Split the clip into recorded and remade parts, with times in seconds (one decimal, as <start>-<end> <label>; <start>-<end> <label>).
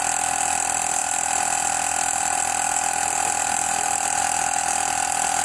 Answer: 0.0-5.4 recorded